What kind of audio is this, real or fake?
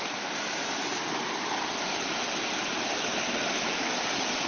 real